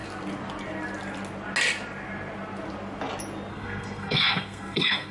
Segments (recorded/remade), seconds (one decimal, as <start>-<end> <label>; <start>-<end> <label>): 0.0-3.5 recorded; 3.5-5.1 remade